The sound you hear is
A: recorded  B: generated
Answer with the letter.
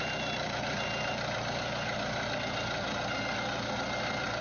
A